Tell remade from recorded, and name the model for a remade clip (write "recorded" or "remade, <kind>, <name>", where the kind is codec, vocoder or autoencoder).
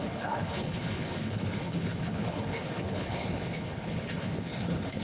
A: remade, codec, HILCodec